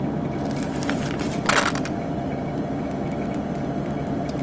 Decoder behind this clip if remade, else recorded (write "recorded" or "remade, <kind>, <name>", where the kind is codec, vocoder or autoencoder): recorded